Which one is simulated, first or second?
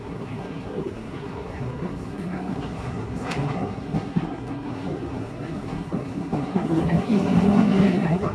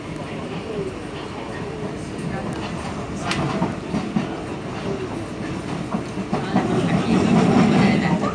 first